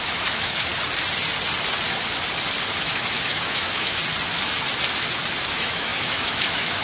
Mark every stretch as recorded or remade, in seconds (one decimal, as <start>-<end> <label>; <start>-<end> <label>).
0.0-0.7 remade; 0.7-2.8 recorded; 2.8-4.0 remade; 4.0-5.5 recorded; 5.5-6.8 remade